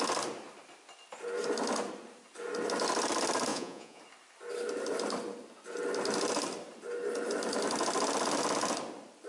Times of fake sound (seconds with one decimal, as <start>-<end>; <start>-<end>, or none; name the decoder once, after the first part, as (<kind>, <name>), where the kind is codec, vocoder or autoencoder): 3.5-4.0 (vocoder, Vocos)